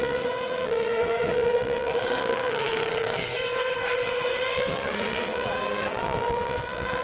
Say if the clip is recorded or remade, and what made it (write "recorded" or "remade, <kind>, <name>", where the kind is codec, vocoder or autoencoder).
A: remade, vocoder, WaveNeXt